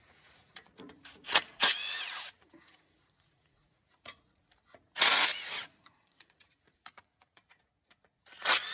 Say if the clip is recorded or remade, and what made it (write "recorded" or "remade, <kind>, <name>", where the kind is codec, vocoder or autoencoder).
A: remade, vocoder, Vocos